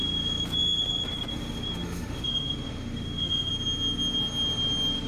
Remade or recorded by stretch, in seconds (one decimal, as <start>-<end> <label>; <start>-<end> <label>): 0.0-1.3 recorded; 1.3-3.5 remade; 3.5-5.1 recorded